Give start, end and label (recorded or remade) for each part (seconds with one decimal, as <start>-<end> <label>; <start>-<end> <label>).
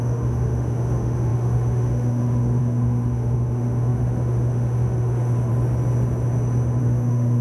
0.0-5.5 remade; 5.5-6.8 recorded; 6.8-7.4 remade